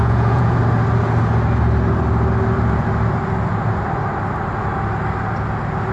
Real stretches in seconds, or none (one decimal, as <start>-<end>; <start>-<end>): 0.6-5.9